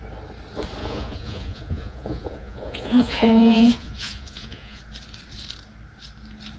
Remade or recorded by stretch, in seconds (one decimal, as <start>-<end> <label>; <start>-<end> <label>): 0.0-0.8 recorded; 0.8-4.8 remade; 4.8-6.6 recorded